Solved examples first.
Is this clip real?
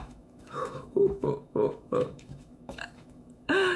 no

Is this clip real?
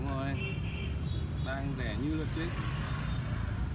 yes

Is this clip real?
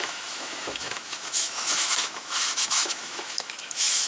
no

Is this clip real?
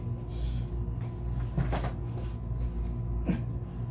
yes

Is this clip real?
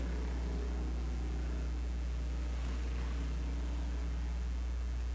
yes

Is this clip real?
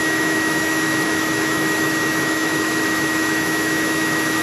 no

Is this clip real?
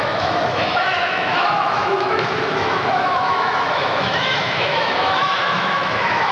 no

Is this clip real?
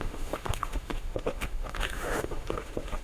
no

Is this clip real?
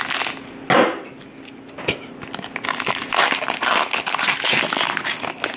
yes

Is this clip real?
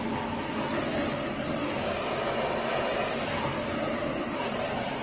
yes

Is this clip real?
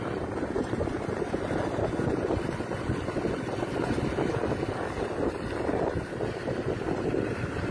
yes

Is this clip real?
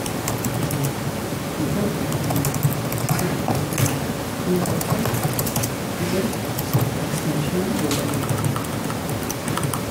yes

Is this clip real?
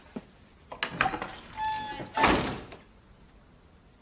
yes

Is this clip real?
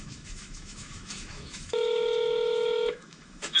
no